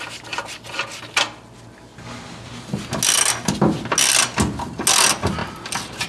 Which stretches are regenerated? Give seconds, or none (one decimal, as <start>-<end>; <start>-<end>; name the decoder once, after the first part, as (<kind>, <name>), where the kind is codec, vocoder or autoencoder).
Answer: none